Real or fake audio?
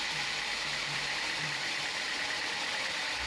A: fake